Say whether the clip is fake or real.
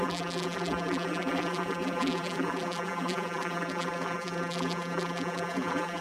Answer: fake